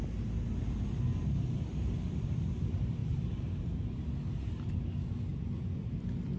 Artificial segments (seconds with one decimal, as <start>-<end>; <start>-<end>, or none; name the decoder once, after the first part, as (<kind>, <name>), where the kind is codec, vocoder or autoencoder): 3.0-3.9 (vocoder, BigVGAN v2)